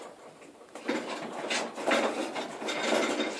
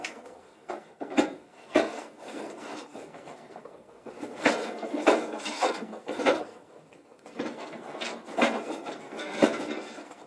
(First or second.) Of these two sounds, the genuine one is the first